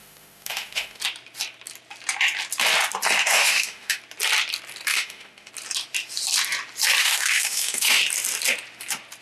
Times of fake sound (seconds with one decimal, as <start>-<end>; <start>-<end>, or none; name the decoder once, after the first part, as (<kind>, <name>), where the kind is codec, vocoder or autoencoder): 0.0-1.0 (autoencoder, DAC-VAE); 3.2-4.0; 4.9-5.5; 7.0-8.0